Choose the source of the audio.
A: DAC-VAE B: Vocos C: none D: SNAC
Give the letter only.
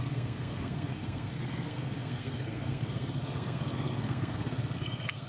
D